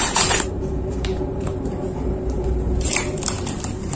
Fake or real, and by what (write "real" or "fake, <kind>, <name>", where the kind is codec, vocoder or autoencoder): fake, vocoder, BigVGAN v2